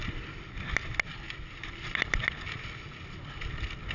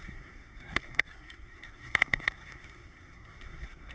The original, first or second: first